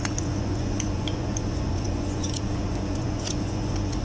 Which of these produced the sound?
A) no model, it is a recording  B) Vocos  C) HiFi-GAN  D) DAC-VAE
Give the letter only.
B